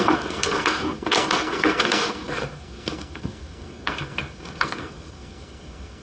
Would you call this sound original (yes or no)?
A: no